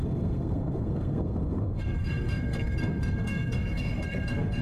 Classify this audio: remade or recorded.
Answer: remade